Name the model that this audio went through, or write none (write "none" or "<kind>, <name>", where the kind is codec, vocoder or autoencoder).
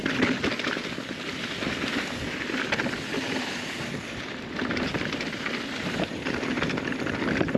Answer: none